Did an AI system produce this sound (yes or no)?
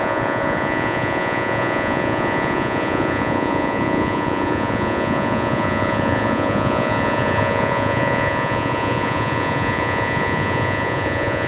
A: yes